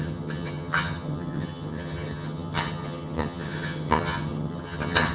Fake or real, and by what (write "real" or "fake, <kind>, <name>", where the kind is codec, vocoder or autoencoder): fake, vocoder, HiFi-GAN